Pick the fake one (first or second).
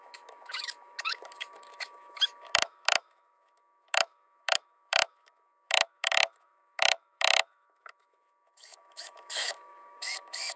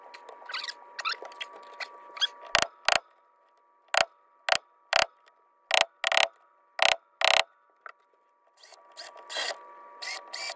first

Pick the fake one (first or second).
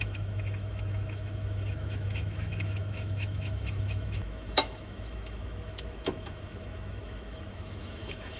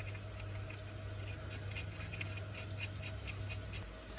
first